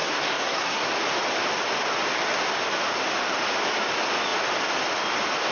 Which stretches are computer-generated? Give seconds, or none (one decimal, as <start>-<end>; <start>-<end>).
0.0-0.9